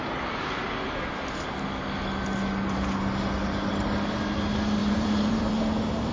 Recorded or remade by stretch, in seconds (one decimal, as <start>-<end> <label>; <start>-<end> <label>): 0.0-4.8 recorded; 4.8-6.1 remade